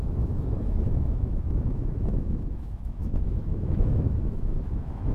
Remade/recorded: remade